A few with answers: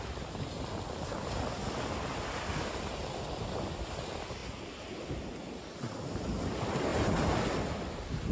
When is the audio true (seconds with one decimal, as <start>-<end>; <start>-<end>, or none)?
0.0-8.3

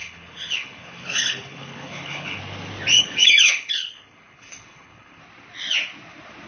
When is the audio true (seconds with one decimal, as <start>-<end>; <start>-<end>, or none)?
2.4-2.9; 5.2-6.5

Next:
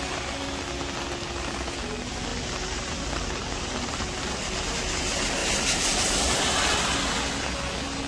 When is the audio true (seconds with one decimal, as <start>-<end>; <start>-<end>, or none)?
0.0-2.3; 4.3-5.4; 6.2-8.1